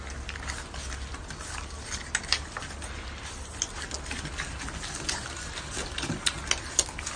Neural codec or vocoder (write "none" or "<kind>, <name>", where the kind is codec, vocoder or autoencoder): none